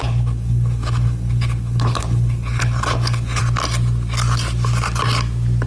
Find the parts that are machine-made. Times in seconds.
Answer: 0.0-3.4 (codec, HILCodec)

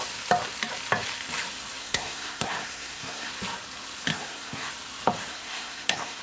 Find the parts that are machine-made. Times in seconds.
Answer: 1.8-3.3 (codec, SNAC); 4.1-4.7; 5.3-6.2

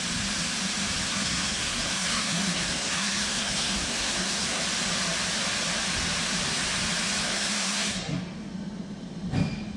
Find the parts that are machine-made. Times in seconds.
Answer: 1.1-4.6 (codec, SNAC); 7.2-8.2